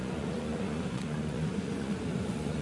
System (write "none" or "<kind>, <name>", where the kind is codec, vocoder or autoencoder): vocoder, Vocos